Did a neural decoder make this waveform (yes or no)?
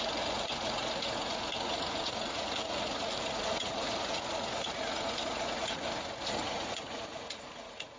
yes